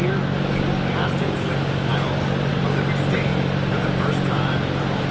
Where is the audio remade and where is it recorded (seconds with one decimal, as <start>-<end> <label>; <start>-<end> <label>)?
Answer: 0.0-1.0 recorded; 1.0-1.5 remade; 1.5-5.1 recorded